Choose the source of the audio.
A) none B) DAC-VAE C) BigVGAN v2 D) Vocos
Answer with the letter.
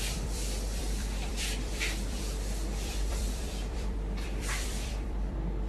C